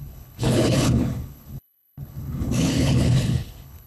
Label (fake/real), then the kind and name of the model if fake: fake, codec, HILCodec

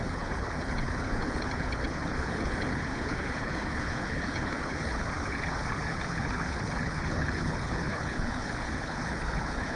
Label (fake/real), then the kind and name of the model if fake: fake, codec, HILCodec